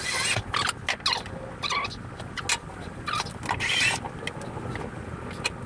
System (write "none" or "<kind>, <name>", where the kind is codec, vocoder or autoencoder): none